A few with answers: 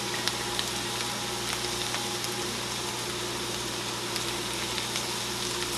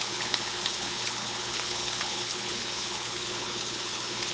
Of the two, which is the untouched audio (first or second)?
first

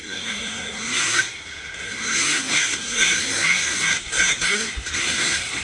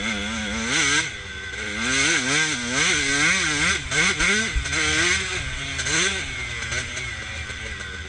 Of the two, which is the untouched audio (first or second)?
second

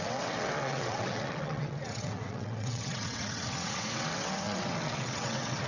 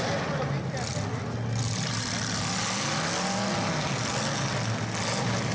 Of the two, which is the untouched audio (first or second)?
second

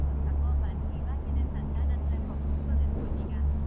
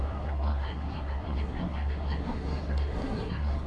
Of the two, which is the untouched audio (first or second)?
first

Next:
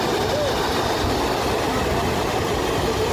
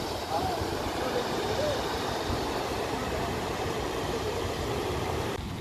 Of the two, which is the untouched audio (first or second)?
first